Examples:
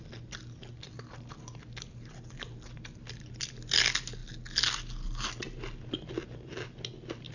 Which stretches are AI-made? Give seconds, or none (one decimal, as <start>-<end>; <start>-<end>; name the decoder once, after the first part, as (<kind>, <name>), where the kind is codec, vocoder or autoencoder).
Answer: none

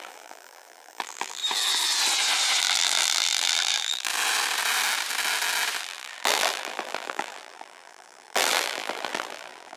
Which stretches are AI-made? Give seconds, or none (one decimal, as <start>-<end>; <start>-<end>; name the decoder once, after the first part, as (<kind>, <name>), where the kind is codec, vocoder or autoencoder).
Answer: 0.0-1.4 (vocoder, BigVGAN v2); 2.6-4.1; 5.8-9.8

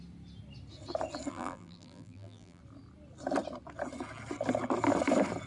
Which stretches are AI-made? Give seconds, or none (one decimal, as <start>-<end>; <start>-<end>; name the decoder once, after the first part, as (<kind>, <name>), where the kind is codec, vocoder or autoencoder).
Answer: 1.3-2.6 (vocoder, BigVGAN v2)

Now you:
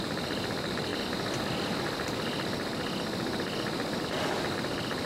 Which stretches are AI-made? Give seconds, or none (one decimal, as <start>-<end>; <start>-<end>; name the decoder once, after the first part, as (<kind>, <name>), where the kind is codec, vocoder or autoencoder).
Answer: 0.0-0.9 (vocoder, BigVGAN v2); 4.0-5.1

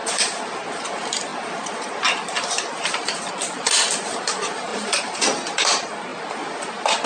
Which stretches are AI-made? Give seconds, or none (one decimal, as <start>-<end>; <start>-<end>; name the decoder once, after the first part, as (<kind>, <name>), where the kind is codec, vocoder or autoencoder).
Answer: 0.0-0.9 (vocoder, BigVGAN v2); 4.7-5.2